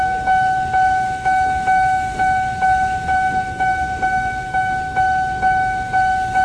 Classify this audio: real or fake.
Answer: fake